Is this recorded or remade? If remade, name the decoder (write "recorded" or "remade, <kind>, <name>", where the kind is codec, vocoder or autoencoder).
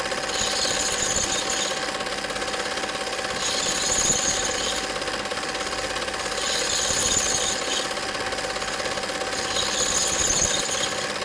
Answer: recorded